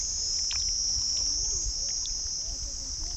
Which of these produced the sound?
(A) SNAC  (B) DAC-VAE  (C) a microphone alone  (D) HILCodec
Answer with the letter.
C